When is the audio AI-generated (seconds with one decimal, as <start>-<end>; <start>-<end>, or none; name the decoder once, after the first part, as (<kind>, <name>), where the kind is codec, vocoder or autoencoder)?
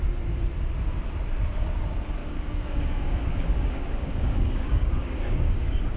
2.2-6.0 (codec, DAC)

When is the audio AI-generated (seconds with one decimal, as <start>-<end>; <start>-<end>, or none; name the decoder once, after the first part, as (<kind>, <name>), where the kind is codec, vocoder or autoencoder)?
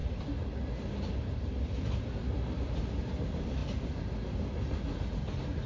none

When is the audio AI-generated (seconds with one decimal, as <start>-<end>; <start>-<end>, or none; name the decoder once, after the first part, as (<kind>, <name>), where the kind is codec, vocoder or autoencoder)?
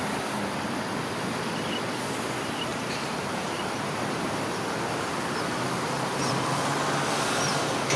2.7-4.2 (vocoder, BigVGAN v2)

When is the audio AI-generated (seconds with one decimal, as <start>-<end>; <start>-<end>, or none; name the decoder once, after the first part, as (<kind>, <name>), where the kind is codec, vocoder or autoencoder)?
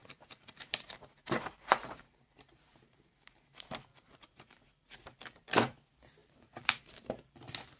0.0-4.7 (vocoder, BigVGAN v2); 6.2-7.3